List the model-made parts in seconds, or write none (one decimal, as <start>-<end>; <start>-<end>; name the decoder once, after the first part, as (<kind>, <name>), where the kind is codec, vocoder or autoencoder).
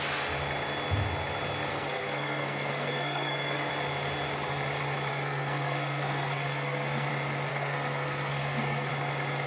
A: 1.7-3.7 (codec, SNAC); 5.1-7.1; 7.5-8.9